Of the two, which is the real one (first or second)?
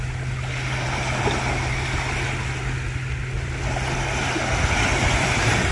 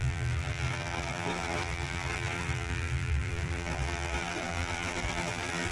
first